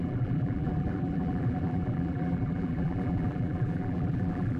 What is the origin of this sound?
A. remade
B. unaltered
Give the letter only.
A